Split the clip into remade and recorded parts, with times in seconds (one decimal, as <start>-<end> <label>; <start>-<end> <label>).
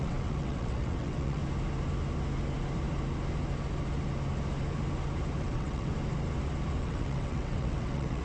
0.0-1.4 remade; 1.4-5.4 recorded; 5.4-5.9 remade; 5.9-6.8 recorded; 6.8-8.2 remade